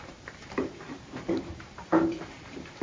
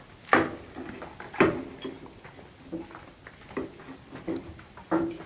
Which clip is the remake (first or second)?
first